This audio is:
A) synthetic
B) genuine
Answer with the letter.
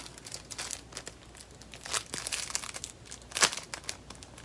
B